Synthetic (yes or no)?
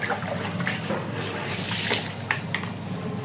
no